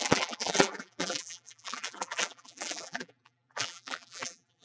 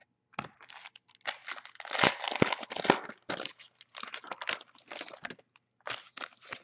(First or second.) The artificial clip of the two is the first